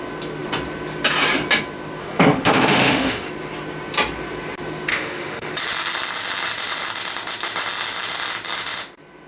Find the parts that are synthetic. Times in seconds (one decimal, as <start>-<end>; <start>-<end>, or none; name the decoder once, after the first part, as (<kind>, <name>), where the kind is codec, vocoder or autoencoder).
2.0-3.3 (autoencoder, DAC-VAE); 4.9-5.5